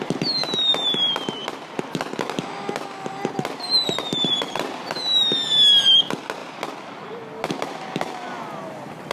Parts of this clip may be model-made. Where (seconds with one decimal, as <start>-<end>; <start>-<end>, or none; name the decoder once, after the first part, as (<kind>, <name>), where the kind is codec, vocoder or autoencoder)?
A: none